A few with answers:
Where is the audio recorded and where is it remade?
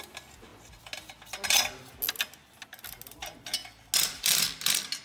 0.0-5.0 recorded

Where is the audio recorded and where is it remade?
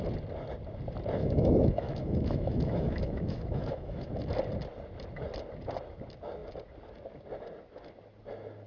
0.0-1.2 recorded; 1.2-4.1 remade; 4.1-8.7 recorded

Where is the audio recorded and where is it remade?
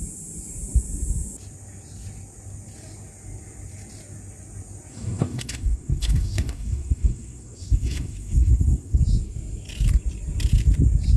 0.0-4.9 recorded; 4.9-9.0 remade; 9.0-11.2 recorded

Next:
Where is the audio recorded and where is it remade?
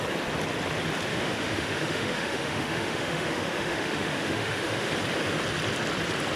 0.0-1.1 recorded; 1.1-4.9 remade; 4.9-6.4 recorded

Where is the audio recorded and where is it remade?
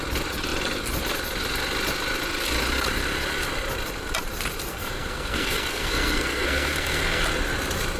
0.0-4.7 recorded; 4.7-7.2 remade; 7.2-8.0 recorded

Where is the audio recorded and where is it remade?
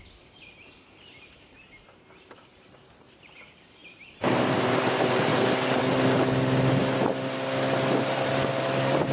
0.0-5.3 remade; 5.3-8.3 recorded; 8.3-9.1 remade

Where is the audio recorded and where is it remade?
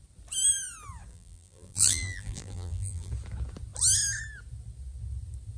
0.0-1.1 recorded; 1.1-3.1 remade; 3.1-5.6 recorded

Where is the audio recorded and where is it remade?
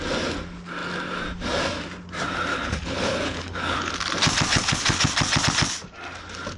0.0-2.5 recorded; 2.5-3.9 remade; 3.9-4.5 recorded; 4.5-5.1 remade; 5.1-6.6 recorded